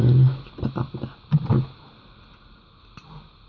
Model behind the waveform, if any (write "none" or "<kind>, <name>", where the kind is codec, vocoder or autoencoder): none